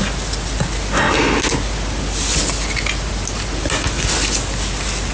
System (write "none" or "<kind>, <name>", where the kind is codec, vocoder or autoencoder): none